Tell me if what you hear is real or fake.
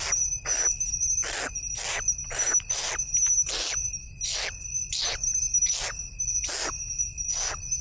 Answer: real